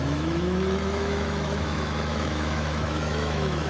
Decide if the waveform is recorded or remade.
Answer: remade